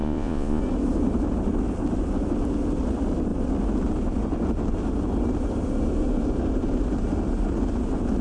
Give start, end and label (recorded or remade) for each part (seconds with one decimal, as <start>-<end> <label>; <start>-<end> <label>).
0.0-0.6 remade; 0.6-8.2 recorded